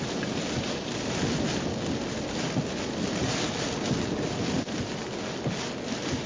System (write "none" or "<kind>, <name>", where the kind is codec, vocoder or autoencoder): none